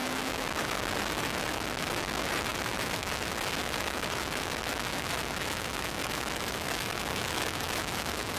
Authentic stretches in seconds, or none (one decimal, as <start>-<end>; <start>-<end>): none